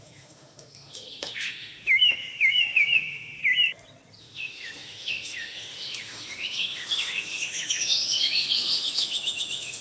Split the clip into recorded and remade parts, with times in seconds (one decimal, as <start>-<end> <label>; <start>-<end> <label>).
0.0-3.4 remade; 3.4-4.2 recorded; 4.2-9.8 remade